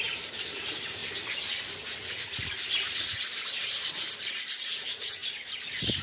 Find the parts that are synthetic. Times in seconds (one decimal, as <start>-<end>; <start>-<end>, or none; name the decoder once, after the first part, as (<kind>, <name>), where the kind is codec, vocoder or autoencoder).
0.0-1.0 (vocoder, BigVGAN v2); 3.8-5.2